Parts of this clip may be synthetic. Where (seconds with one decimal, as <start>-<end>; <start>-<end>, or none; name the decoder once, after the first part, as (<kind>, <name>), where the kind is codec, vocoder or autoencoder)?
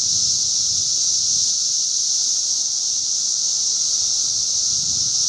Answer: none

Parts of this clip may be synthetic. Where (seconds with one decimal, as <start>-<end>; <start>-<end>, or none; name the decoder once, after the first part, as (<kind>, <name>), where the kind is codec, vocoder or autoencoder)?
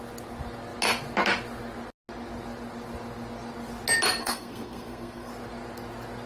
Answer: 4.2-5.3 (codec, SNAC)